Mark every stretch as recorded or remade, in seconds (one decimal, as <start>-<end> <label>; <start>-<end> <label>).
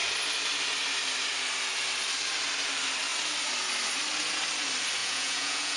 0.0-5.0 recorded; 5.0-5.8 remade